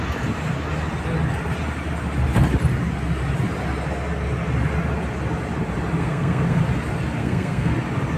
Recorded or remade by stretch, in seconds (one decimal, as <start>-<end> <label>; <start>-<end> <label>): 0.0-6.0 recorded; 6.0-6.6 remade; 6.6-7.2 recorded; 7.2-7.7 remade; 7.7-8.2 recorded